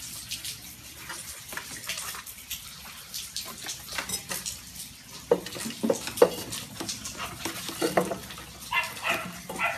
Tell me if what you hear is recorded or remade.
recorded